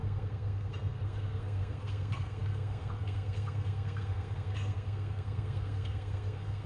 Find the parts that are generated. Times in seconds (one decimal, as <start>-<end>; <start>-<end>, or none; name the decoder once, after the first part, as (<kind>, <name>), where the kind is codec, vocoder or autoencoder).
0.0-6.7 (codec, SNAC)